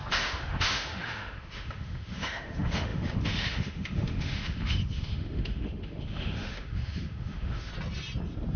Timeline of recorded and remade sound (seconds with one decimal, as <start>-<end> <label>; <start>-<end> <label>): 0.0-7.7 remade; 7.7-8.6 recorded